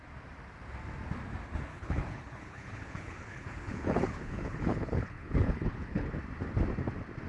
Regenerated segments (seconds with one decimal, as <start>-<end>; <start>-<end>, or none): 1.7-6.1